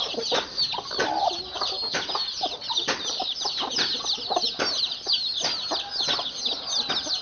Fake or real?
real